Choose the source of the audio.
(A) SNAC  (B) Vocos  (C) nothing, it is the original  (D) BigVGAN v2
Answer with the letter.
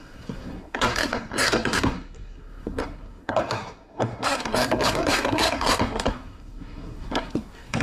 A